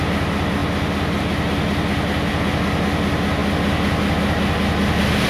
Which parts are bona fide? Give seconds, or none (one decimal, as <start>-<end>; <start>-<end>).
0.0-5.3